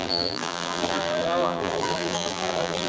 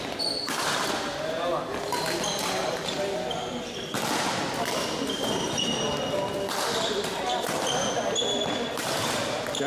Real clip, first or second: second